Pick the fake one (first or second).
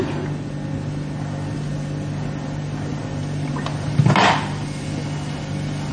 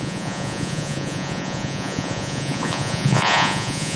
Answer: second